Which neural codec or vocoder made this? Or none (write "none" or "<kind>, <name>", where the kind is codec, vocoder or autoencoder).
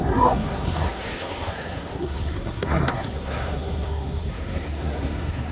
codec, SNAC